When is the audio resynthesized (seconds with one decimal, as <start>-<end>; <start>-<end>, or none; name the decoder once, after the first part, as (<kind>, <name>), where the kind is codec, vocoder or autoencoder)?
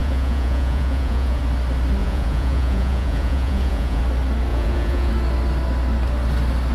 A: 0.0-1.4 (vocoder, Vocos); 2.0-4.0; 4.5-5.1